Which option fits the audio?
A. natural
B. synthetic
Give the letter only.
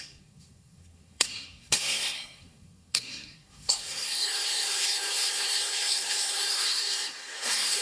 B